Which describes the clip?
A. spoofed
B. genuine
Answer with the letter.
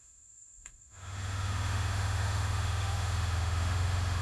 A